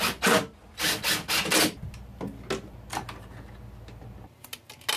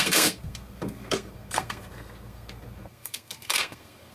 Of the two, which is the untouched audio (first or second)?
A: first